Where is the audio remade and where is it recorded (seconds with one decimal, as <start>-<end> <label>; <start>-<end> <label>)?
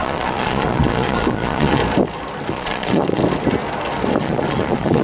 0.0-1.8 remade; 1.8-2.5 recorded; 2.5-3.2 remade; 3.2-4.2 recorded; 4.2-5.0 remade